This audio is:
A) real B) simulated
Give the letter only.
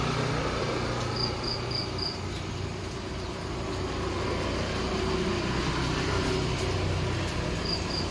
A